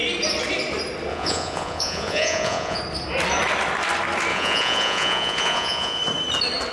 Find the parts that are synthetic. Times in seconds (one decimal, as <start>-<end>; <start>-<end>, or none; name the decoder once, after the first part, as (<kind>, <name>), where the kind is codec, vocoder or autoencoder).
1.1-2.8 (vocoder, Vocos); 4.3-6.0